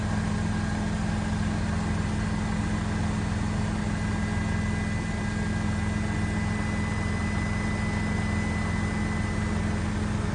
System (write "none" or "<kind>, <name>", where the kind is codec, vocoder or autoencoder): none